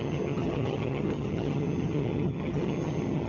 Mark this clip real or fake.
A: fake